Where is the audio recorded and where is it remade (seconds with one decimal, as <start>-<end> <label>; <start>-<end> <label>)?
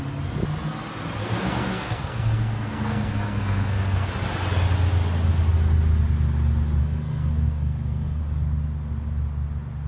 0.0-1.2 recorded; 1.2-4.1 remade; 4.1-6.8 recorded; 6.8-8.2 remade; 8.2-9.9 recorded